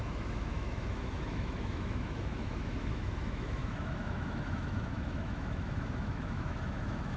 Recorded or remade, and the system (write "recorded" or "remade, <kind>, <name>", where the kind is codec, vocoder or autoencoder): remade, autoencoder, DAC-VAE